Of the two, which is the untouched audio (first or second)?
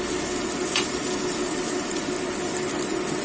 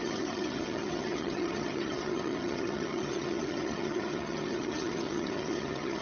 first